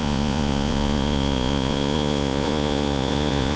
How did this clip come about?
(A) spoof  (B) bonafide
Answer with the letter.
A